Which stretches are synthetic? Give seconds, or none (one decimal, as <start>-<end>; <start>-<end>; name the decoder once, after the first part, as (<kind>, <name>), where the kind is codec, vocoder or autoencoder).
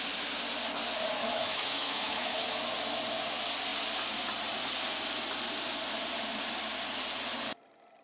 1.2-2.6 (autoencoder, DAC-VAE)